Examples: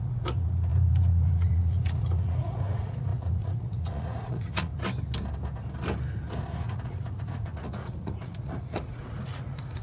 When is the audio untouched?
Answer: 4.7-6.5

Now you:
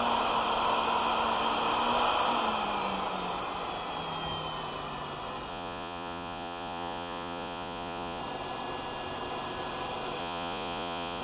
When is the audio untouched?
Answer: 0.0-5.5; 8.2-10.2